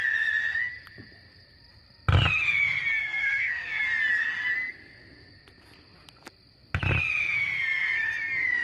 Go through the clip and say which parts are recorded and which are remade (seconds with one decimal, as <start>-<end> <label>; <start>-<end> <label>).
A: 0.0-3.0 recorded; 3.0-3.8 remade; 3.8-8.6 recorded